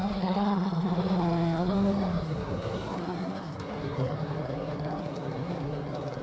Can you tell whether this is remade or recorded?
remade